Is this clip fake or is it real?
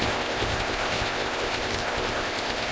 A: fake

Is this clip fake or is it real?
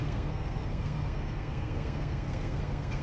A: fake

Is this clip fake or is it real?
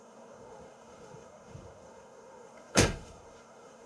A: fake